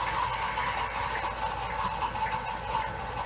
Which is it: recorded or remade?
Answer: recorded